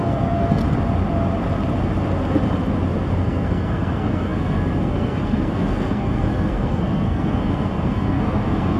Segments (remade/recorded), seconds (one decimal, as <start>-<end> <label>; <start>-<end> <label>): 0.0-0.6 remade; 0.6-3.2 recorded; 3.2-8.8 remade

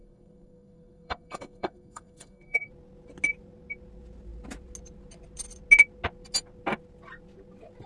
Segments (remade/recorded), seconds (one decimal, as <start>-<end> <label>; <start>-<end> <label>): 0.0-2.7 remade; 2.7-7.9 recorded